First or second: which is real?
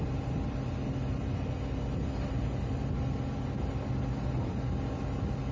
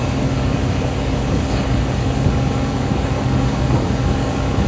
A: first